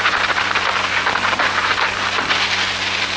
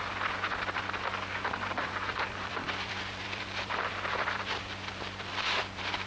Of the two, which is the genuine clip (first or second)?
first